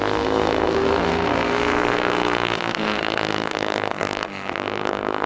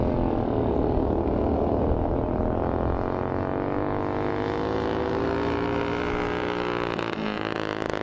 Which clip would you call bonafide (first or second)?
second